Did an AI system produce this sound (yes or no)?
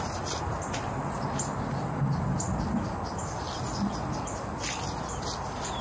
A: no